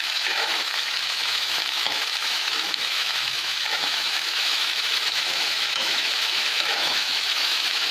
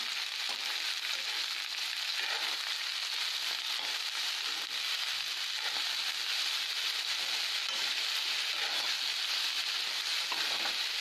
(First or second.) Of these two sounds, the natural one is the second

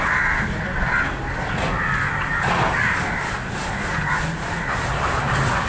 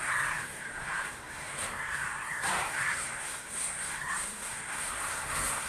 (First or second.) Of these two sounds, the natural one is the first